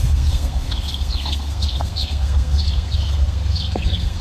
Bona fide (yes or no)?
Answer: no